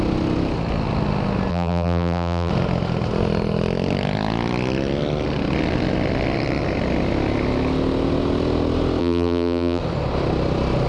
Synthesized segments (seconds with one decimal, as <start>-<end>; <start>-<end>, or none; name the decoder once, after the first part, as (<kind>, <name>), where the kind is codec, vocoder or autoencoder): 1.5-2.5 (vocoder, BigVGAN v2); 9.0-9.8